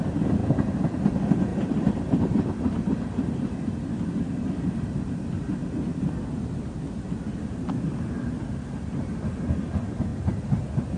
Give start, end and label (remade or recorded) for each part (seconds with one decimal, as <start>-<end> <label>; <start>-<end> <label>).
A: 0.0-1.5 recorded; 1.5-3.5 remade; 3.5-11.0 recorded